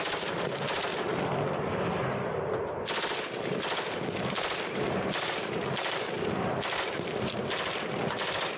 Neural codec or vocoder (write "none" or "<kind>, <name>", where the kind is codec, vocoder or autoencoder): none